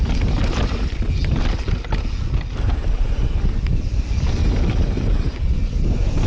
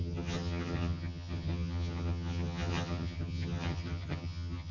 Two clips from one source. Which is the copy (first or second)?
second